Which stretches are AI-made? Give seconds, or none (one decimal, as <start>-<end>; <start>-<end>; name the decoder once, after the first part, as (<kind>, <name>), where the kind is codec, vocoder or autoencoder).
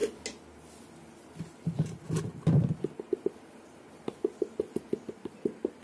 none